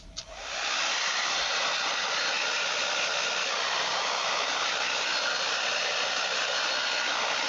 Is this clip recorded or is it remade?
recorded